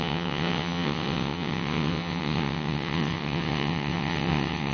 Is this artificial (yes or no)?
yes